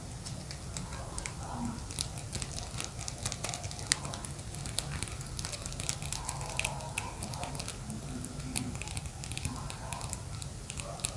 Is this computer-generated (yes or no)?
no